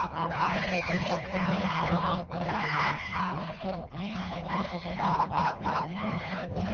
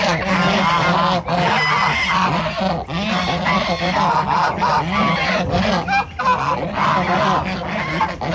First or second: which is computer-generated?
first